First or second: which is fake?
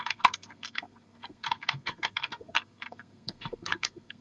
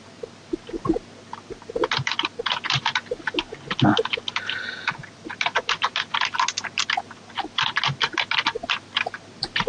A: first